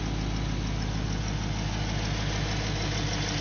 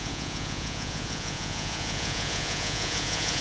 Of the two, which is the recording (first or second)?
first